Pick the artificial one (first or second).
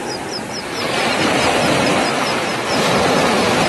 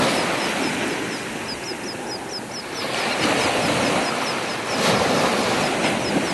first